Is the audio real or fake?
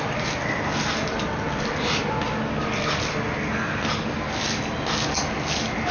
real